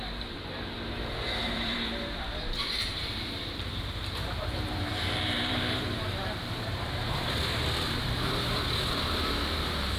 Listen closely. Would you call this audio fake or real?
fake